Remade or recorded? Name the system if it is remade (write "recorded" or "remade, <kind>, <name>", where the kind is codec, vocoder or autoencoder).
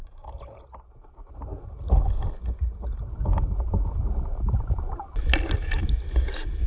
recorded